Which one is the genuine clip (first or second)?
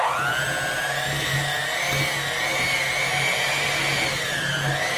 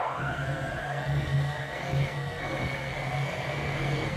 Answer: first